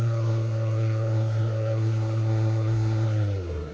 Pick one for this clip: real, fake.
fake